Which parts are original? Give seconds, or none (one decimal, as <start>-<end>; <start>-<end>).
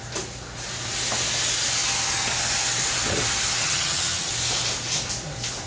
0.0-3.6; 4.3-5.7